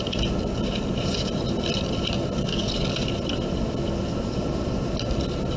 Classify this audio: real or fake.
real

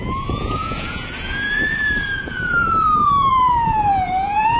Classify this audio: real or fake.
fake